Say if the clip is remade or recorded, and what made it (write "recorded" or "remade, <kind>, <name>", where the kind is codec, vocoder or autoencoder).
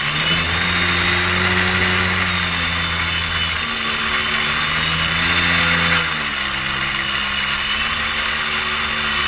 recorded